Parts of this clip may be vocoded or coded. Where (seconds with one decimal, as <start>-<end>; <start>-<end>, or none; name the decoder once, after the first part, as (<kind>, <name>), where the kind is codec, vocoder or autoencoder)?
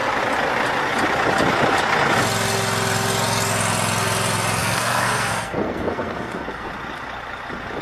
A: 4.6-6.7 (codec, SNAC)